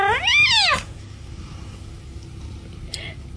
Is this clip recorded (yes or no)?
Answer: yes